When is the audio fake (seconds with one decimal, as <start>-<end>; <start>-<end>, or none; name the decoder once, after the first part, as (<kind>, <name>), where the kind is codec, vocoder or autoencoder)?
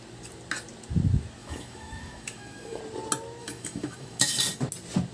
1.4-2.8 (autoencoder, DAC-VAE); 3.4-4.3